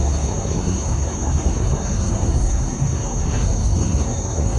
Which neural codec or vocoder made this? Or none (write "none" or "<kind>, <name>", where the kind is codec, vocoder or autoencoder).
codec, SNAC